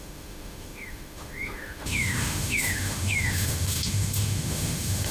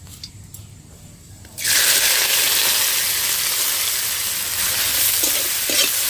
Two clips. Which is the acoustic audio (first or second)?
second